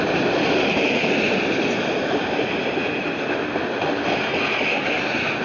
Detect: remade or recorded recorded